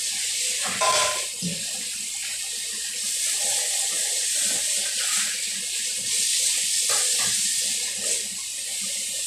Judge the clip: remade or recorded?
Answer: recorded